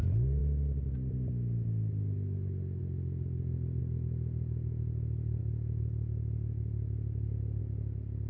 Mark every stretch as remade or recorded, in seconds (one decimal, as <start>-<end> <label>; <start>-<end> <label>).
0.0-8.3 recorded